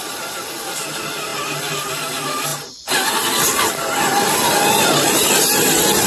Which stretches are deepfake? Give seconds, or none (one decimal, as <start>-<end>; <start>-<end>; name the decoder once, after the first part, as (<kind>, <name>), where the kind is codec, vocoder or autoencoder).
none

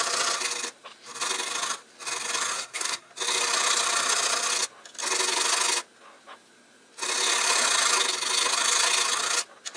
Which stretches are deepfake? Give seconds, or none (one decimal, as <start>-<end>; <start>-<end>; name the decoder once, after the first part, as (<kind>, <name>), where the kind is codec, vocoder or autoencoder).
2.5-3.1 (codec, SNAC)

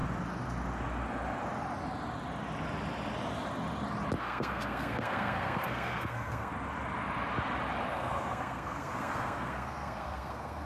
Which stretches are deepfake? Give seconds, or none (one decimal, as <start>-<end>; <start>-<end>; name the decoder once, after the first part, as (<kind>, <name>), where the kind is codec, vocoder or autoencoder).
4.2-6.5 (codec, SNAC); 7.9-10.7

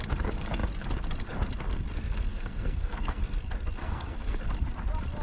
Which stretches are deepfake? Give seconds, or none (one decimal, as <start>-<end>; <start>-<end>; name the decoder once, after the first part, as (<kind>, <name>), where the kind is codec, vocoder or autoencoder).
2.3-3.2 (codec, SNAC); 3.8-4.4